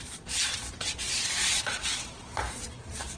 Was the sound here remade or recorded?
remade